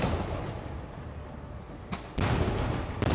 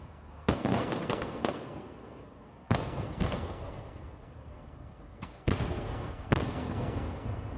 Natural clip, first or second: first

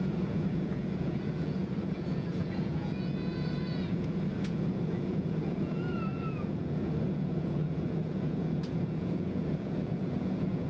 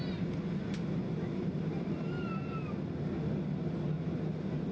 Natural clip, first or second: second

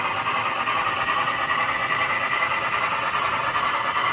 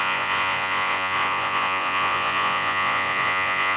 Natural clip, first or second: first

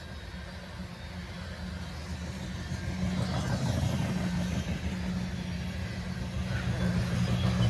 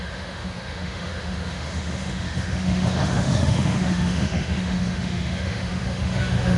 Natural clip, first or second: first